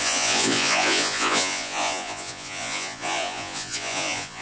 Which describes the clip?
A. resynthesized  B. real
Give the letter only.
A